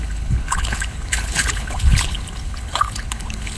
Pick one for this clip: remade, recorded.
remade